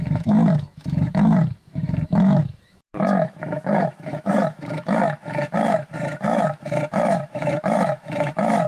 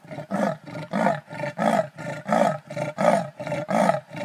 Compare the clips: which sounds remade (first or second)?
first